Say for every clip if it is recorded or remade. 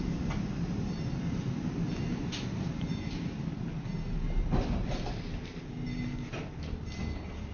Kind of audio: recorded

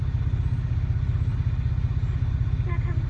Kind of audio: recorded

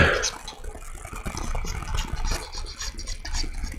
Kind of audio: recorded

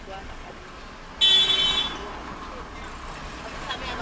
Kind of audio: recorded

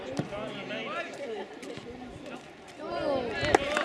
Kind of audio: recorded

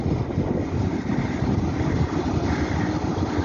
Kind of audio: recorded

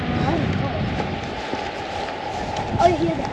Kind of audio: recorded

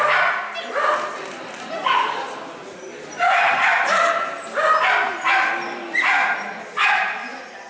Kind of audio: recorded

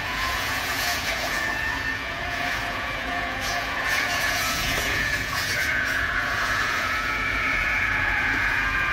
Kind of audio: remade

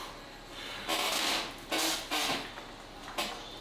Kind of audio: recorded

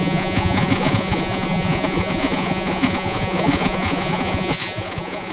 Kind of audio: remade